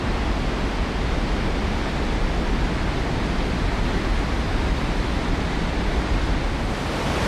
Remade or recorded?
recorded